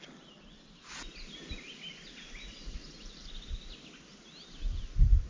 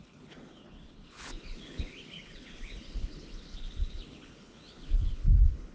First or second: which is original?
first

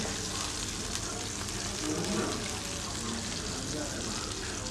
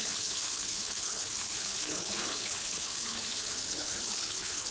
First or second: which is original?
first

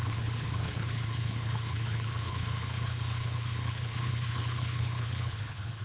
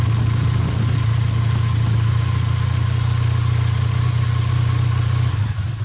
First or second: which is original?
second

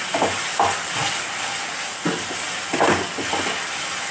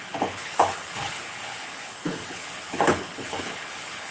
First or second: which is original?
first